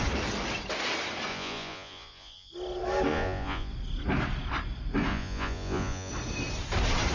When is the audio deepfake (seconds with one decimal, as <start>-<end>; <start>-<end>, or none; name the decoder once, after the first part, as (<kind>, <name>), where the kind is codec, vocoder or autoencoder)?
1.3-2.5 (vocoder, Vocos); 3.1-3.7; 5.1-6.1